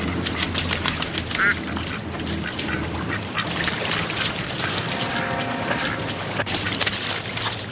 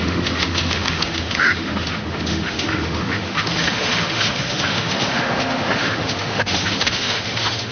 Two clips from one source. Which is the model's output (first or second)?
second